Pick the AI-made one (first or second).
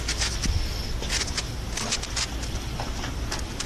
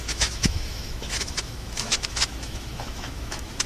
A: second